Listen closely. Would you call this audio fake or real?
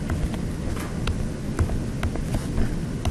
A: real